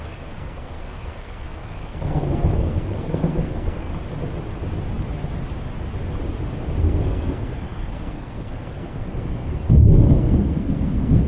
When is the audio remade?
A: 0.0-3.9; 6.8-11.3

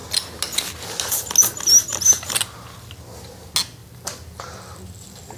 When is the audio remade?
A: 3.8-5.4

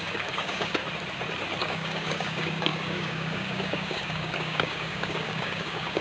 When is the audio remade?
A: 0.0-0.8; 1.6-6.0

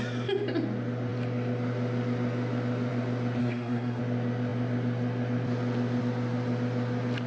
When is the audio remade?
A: 3.4-4.0